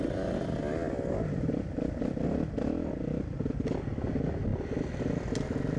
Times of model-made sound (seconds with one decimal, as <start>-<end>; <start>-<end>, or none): none